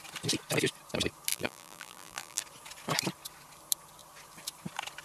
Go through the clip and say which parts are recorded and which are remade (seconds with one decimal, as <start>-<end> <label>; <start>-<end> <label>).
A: 0.0-1.3 recorded; 1.3-2.4 remade; 2.4-5.0 recorded